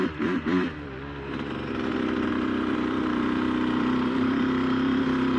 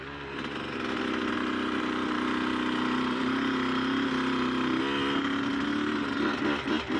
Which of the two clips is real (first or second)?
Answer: second